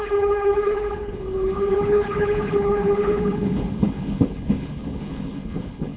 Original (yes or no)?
no